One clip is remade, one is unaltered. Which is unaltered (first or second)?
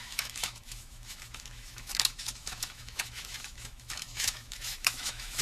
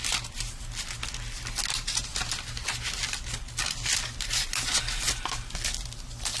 second